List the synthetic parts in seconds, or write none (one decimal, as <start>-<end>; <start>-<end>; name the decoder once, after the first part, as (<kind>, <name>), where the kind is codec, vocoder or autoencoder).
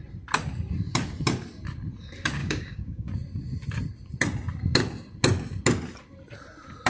2.4-3.1 (codec, DAC)